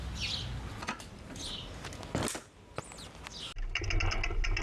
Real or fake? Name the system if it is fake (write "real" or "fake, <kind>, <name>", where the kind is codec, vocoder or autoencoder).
real